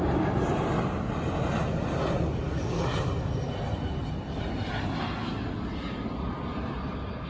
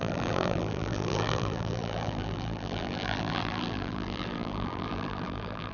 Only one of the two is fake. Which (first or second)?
second